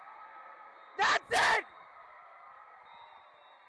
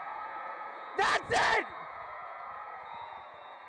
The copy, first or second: second